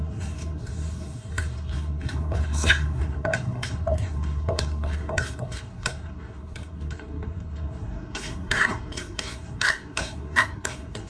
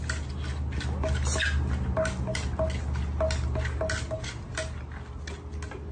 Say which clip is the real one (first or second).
second